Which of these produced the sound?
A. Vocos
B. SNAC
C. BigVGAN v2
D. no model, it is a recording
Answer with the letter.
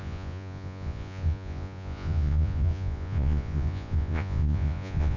A